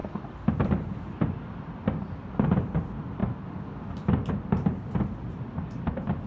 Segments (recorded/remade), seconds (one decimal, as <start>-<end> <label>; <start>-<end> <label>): 0.0-6.3 recorded